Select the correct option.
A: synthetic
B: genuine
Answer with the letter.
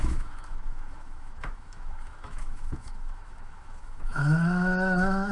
A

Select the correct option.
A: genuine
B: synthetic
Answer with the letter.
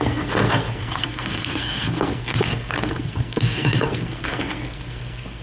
B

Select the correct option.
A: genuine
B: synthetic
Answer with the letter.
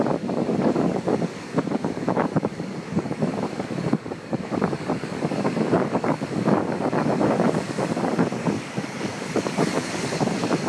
B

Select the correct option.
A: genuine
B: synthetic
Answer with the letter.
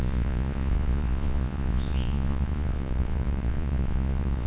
B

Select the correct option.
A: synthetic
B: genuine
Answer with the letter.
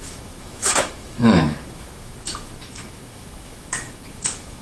A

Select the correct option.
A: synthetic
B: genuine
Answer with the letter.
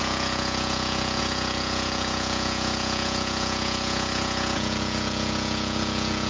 A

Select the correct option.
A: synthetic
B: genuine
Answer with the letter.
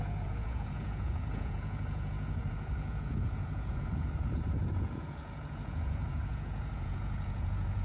A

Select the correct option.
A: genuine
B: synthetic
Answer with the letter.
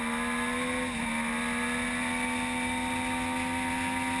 A